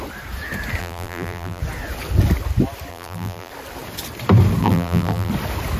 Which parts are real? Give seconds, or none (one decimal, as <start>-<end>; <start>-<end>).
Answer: 0.0-0.8; 1.6-2.9; 3.5-4.6; 5.3-5.8